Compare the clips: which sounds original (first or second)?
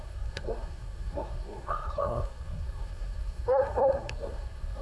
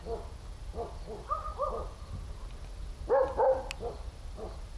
second